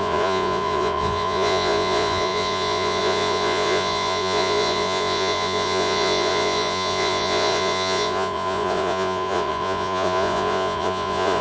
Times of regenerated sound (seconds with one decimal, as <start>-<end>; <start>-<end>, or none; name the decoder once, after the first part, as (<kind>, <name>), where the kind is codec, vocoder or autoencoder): 0.0-11.4 (vocoder, Vocos)